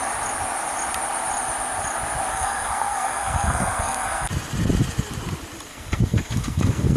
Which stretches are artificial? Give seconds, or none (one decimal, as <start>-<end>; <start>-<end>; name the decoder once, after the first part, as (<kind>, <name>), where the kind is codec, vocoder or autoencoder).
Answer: 2.3-4.3 (codec, SNAC); 5.7-7.0